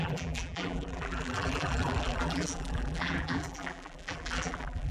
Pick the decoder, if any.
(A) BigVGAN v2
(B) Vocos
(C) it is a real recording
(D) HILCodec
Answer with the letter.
A